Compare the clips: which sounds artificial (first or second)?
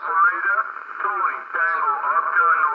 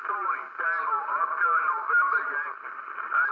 second